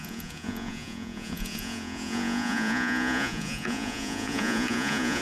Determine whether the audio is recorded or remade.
remade